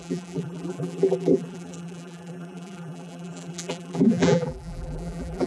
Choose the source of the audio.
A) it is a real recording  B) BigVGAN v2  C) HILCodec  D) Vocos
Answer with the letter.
B